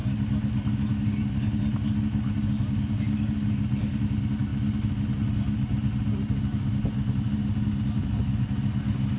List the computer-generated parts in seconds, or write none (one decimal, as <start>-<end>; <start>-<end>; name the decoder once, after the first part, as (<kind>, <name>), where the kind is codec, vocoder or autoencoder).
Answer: none